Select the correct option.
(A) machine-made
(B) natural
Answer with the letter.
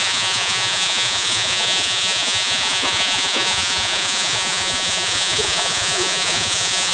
A